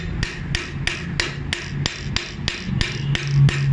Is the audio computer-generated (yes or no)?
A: no